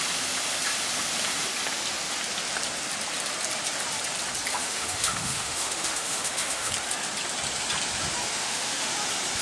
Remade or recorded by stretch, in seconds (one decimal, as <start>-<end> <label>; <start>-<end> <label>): 0.0-4.5 recorded; 4.5-6.7 remade; 6.7-8.3 recorded; 8.3-8.9 remade; 8.9-9.4 recorded